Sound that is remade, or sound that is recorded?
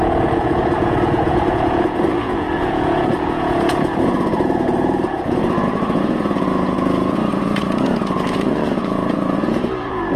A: remade